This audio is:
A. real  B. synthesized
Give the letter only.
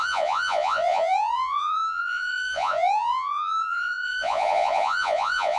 B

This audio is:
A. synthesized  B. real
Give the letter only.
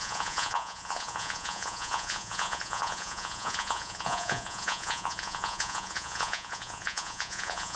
A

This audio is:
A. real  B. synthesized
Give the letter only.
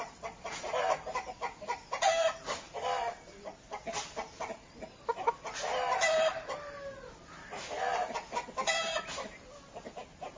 A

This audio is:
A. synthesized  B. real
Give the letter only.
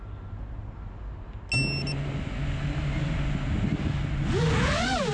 B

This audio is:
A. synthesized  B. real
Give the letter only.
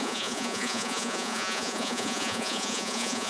A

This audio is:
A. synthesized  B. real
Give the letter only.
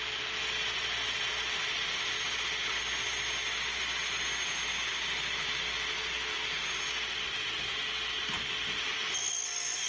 B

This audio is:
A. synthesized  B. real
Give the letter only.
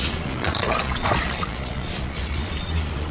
A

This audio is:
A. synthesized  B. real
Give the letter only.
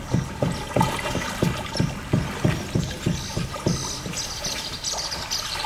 B